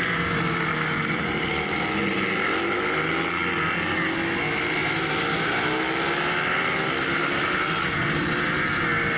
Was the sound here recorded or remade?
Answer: recorded